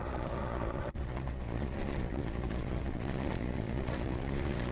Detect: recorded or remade remade